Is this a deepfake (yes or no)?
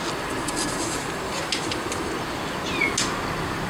no